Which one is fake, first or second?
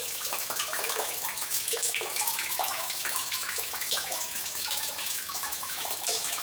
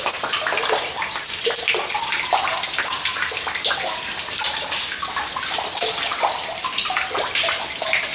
first